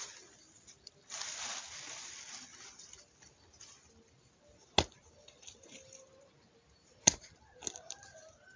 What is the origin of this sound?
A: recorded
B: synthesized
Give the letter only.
A